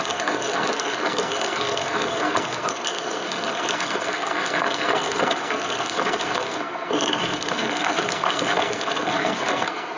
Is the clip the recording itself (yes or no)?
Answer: no